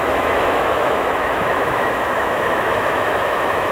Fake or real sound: fake